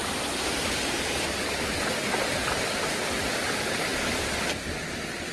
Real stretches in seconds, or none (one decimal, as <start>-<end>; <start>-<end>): 0.0-5.3